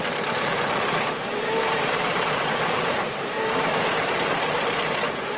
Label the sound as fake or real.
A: fake